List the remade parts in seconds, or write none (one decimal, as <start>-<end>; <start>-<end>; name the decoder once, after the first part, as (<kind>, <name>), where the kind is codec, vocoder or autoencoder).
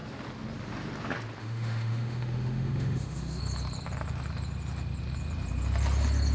1.4-3.4 (autoencoder, DAC-VAE)